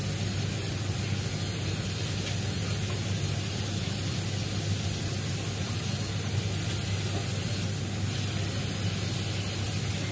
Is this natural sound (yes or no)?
yes